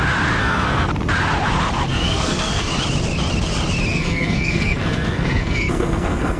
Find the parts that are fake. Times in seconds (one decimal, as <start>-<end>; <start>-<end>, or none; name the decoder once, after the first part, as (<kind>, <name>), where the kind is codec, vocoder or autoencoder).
0.4-0.9 (codec, SNAC); 1.9-2.7; 3.9-6.4